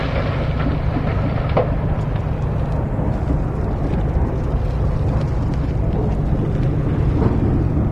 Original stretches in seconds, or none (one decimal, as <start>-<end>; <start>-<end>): 0.0-7.9